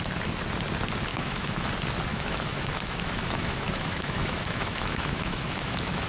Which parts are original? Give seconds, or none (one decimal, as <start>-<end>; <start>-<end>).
0.0-1.1; 1.7-2.1

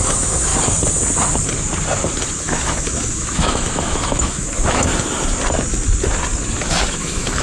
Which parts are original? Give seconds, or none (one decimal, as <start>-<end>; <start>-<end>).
0.5-2.4; 4.9-6.9

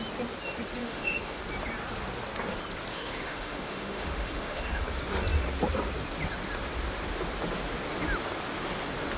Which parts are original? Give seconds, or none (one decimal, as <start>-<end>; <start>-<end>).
0.0-0.8; 1.4-2.9; 4.8-9.2

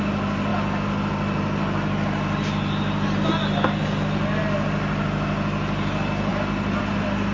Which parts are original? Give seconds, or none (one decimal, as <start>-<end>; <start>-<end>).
0.0-7.3